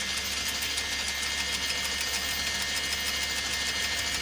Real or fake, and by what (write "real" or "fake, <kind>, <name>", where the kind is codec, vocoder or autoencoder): real